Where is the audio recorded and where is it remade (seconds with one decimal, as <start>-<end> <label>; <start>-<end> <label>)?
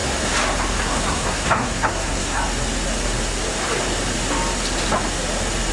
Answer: 0.0-0.8 recorded; 0.8-2.4 remade; 2.4-5.7 recorded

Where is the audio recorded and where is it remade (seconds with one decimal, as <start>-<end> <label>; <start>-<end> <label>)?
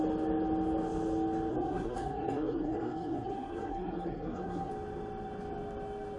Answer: 0.0-1.5 recorded; 1.5-4.7 remade; 4.7-6.2 recorded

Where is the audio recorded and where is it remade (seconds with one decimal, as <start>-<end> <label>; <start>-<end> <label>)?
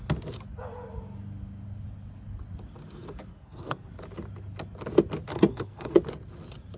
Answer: 0.0-3.3 recorded; 3.3-3.9 remade; 3.9-5.3 recorded; 5.3-6.0 remade; 6.0-6.8 recorded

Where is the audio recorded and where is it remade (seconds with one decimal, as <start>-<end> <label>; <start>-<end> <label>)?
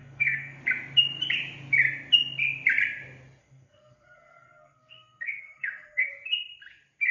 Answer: 0.0-0.6 remade; 0.6-3.4 recorded; 3.4-6.1 remade; 6.1-7.1 recorded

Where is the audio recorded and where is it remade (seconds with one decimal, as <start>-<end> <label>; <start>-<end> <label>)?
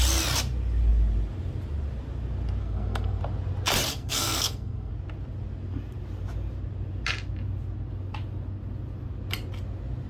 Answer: 0.0-2.6 recorded; 2.6-3.2 remade; 3.2-3.9 recorded; 3.9-4.9 remade; 4.9-10.1 recorded